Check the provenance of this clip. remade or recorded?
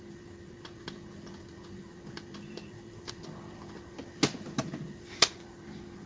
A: recorded